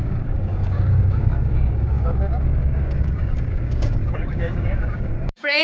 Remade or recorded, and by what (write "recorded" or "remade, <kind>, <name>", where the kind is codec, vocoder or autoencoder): remade, codec, DAC